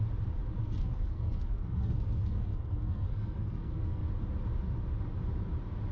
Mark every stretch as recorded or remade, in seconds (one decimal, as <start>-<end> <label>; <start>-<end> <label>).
0.0-0.6 recorded; 0.6-4.1 remade; 4.1-5.9 recorded

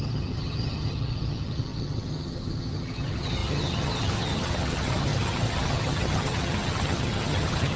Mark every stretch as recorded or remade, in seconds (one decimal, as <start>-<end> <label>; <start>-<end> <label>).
0.0-7.8 remade

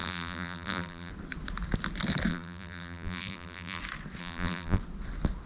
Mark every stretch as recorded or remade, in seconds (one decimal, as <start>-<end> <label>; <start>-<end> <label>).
0.0-1.1 remade; 1.1-2.3 recorded; 2.3-3.8 remade; 3.8-4.2 recorded; 4.2-4.8 remade; 4.8-5.5 recorded

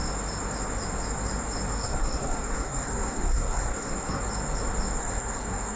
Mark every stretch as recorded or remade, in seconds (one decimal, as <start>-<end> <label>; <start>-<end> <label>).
0.0-1.7 recorded; 1.7-4.2 remade; 4.2-5.0 recorded; 5.0-5.8 remade

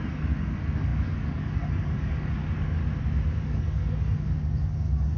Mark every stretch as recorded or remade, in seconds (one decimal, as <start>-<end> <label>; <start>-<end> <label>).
0.0-2.8 remade; 2.8-3.4 recorded; 3.4-5.2 remade